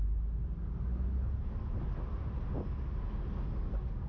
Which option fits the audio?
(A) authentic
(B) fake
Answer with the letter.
A